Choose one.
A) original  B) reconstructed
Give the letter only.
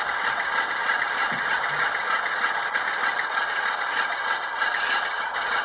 A